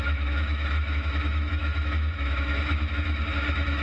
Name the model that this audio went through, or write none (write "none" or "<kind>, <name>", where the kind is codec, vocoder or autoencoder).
autoencoder, DAC-VAE